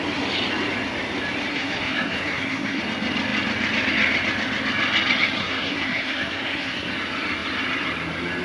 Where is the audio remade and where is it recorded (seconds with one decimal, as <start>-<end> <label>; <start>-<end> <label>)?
0.0-1.5 recorded; 1.5-2.8 remade; 2.8-5.4 recorded; 5.4-6.9 remade; 6.9-8.4 recorded